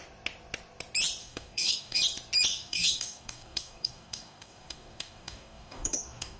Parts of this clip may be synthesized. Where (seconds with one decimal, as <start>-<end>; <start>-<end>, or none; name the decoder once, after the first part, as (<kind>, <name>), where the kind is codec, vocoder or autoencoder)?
1.2-2.0 (codec, DAC); 2.5-6.4